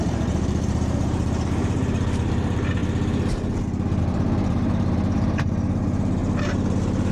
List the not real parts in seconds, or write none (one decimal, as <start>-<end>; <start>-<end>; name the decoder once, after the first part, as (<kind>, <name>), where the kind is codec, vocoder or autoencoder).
0.0-2.8 (vocoder, BigVGAN v2); 4.0-6.2